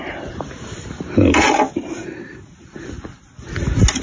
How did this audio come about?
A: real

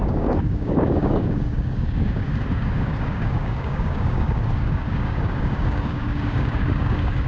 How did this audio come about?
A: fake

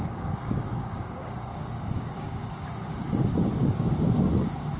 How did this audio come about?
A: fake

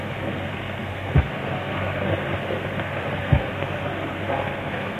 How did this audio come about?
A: fake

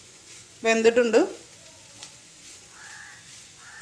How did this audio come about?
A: fake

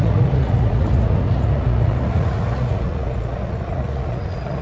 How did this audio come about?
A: fake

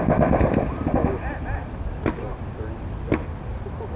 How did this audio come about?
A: real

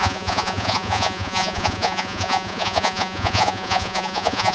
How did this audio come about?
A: fake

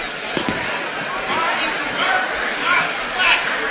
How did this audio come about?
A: real